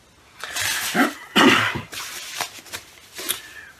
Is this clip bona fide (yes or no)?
yes